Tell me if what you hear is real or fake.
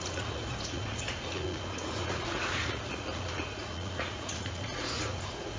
fake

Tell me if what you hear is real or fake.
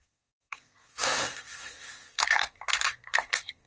fake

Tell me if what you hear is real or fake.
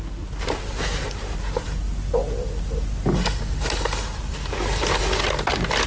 real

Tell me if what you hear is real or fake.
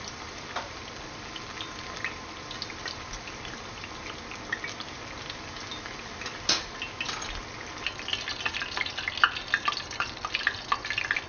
real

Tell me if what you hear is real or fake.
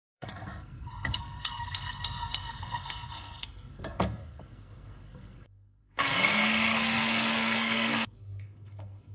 fake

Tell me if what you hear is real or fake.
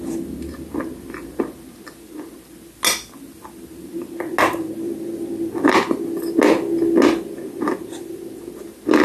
real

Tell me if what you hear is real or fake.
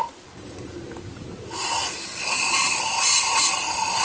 fake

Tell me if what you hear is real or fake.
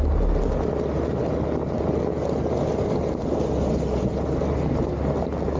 real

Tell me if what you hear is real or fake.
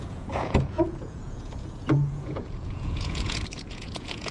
fake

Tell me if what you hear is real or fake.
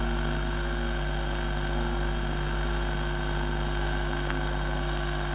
fake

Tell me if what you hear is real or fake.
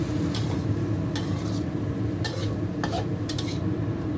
real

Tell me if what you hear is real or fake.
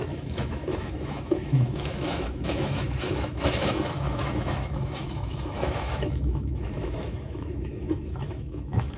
fake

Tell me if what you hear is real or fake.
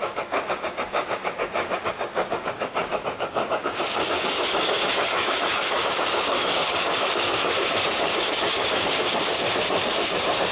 fake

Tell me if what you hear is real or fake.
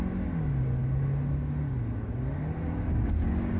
real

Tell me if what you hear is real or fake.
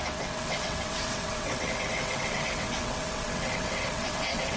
fake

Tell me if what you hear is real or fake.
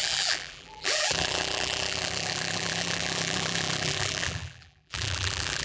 fake